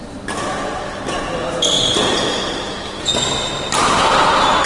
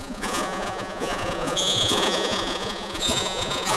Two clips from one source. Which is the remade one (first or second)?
second